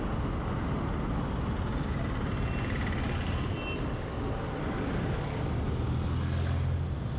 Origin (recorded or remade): recorded